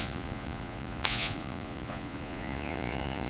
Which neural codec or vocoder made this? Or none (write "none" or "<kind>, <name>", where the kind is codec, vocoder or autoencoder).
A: vocoder, Vocos